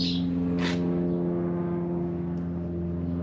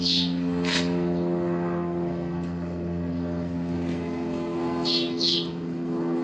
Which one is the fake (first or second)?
second